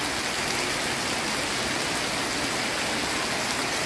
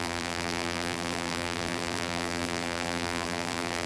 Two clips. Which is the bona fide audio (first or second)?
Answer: first